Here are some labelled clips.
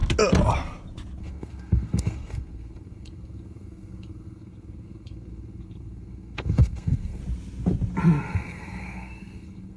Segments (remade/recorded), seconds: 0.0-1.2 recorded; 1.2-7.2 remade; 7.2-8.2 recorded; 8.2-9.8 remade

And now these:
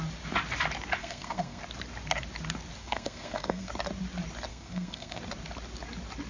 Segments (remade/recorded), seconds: 0.0-1.0 recorded; 1.0-1.6 remade; 1.6-2.8 recorded; 2.8-3.7 remade; 3.7-4.5 recorded; 4.5-5.2 remade; 5.2-6.3 recorded

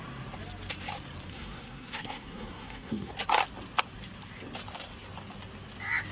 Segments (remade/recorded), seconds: 0.0-1.3 recorded; 1.3-3.1 remade; 3.1-6.1 recorded

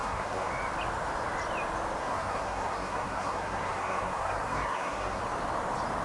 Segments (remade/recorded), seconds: 0.0-0.5 remade; 0.5-2.0 recorded; 2.0-5.2 remade; 5.2-6.0 recorded

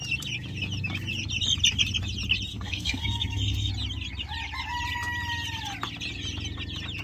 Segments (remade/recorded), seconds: 0.0-2.5 recorded; 2.5-3.7 remade; 3.7-7.0 recorded

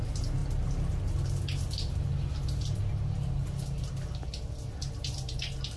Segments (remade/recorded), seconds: 0.0-5.8 recorded